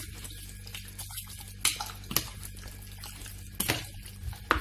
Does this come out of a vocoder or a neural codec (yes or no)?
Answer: no